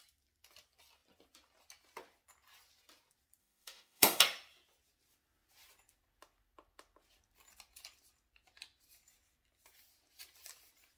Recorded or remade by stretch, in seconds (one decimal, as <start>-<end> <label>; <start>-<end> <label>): 0.0-3.4 recorded; 3.4-4.2 remade; 4.2-11.0 recorded